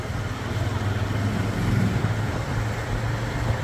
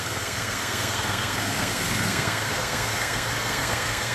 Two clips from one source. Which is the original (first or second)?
first